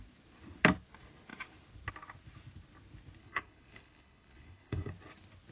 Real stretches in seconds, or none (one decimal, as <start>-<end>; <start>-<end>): 0.0-3.2; 4.9-5.5